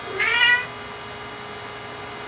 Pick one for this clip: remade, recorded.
recorded